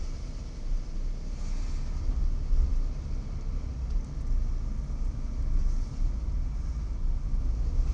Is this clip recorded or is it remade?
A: recorded